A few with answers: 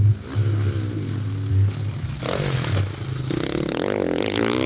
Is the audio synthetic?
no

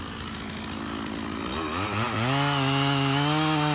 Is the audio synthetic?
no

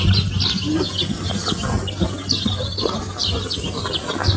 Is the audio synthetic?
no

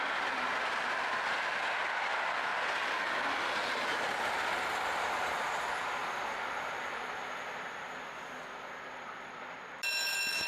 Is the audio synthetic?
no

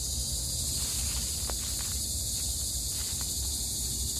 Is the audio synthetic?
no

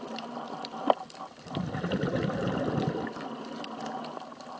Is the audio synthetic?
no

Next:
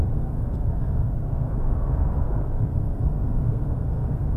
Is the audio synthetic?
yes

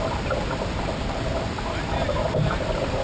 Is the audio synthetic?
no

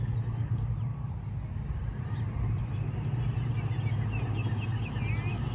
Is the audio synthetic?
no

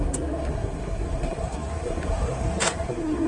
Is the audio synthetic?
yes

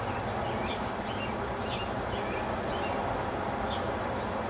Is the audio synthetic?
no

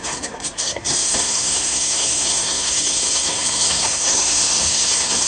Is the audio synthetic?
yes